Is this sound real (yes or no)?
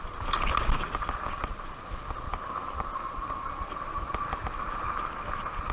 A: yes